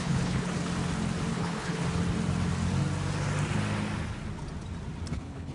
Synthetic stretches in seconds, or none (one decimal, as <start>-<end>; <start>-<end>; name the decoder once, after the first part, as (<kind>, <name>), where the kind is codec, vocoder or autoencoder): 0.0-0.5 (codec, HILCodec); 1.3-1.8; 5.1-5.5